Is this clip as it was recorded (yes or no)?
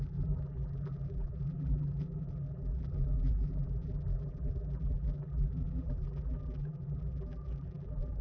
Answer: no